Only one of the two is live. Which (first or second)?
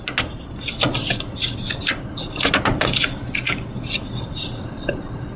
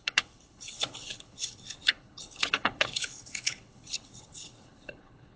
first